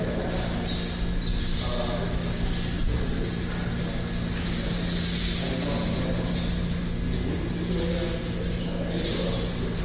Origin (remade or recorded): recorded